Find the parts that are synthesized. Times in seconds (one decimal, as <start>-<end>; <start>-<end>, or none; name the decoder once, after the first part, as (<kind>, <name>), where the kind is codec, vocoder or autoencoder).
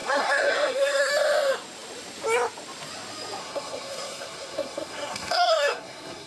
0.0-1.1 (codec, SNAC); 3.4-6.3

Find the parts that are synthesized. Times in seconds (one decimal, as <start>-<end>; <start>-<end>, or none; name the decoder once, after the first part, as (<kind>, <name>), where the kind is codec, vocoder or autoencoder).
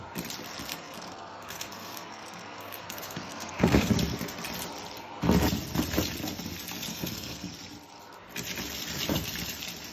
0.7-3.9 (codec, SNAC); 6.9-7.5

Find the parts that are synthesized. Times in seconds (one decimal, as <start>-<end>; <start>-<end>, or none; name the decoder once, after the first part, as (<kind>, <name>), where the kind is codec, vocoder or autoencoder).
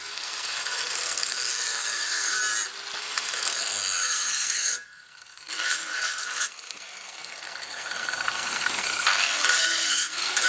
0.0-2.4 (codec, SNAC); 3.0-10.5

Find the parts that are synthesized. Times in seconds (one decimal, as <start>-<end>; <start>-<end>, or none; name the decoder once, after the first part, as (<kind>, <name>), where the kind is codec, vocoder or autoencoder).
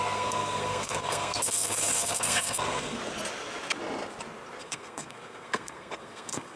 0.0-3.0 (codec, SNAC); 4.6-6.6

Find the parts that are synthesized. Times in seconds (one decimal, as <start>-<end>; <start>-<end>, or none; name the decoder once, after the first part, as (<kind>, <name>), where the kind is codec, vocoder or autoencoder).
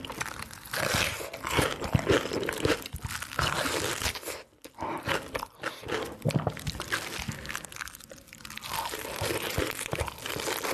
none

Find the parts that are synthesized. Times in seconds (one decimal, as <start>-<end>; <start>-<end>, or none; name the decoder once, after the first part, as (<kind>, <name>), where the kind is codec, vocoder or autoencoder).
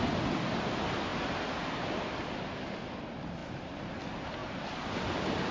none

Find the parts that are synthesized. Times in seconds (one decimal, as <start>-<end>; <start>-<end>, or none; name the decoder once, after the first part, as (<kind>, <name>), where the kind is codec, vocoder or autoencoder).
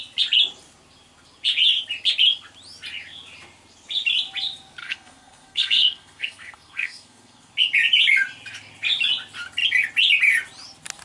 4.8-7.5 (codec, SNAC)